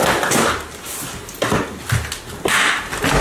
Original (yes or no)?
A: yes